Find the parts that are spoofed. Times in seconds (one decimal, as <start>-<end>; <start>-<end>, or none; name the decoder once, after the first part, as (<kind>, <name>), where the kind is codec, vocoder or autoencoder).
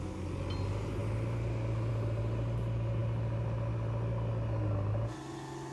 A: none